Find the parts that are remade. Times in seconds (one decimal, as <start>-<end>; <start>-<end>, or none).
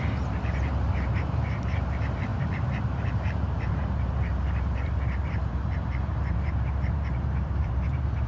0.0-8.3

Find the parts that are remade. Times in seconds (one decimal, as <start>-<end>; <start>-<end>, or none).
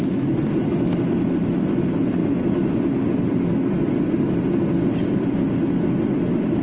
none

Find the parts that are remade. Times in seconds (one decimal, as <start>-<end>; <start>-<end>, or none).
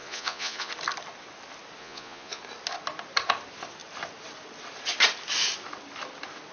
0.0-0.7; 1.8-2.4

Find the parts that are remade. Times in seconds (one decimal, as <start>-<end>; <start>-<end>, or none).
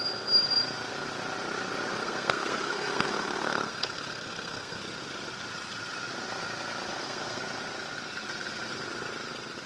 2.0-4.8; 6.9-7.4